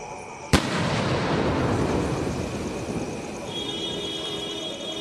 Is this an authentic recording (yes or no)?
no